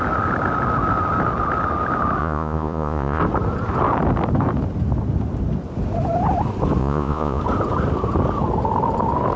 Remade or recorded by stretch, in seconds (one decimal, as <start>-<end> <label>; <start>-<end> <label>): 0.0-2.2 recorded; 2.2-3.2 remade; 3.2-6.8 recorded; 6.8-7.4 remade; 7.4-9.4 recorded